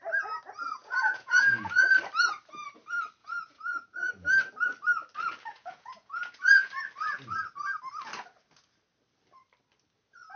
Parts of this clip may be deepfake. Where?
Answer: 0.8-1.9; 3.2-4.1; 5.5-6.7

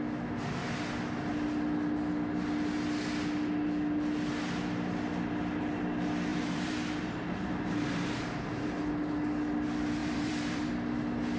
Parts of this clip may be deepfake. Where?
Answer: 6.3-8.6; 10.0-10.7

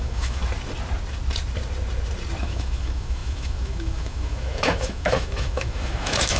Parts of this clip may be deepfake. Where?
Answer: 0.0-0.4; 2.4-6.4